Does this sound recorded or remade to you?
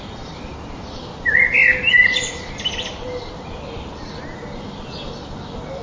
recorded